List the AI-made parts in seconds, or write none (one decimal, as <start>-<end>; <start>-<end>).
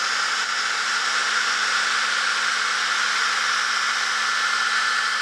none